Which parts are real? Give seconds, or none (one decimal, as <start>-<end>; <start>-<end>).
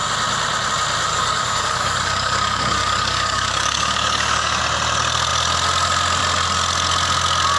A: 0.0-1.1; 4.6-7.6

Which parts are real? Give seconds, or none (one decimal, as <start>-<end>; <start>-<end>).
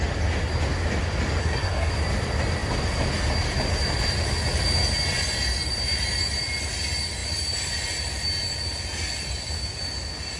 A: 0.0-1.4; 1.9-10.4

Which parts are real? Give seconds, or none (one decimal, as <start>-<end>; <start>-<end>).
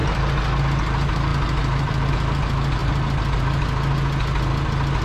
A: 0.6-2.8; 3.4-5.0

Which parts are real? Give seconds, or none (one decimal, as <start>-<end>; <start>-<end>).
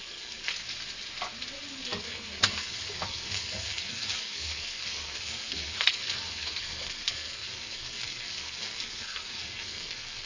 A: 0.5-2.0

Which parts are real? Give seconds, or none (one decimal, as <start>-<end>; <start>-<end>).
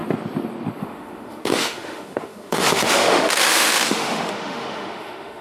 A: 0.0-0.8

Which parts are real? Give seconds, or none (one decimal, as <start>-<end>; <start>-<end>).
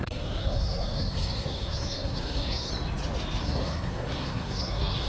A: 2.7-3.4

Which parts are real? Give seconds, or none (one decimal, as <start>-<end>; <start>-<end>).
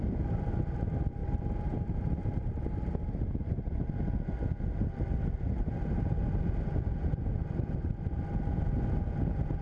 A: 0.0-1.2; 2.3-9.6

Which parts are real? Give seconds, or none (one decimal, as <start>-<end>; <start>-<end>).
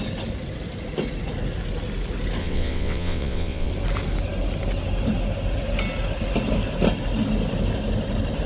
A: 0.0-2.4; 3.7-8.5